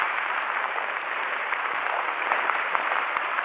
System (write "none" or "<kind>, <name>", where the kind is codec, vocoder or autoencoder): vocoder, BigVGAN v2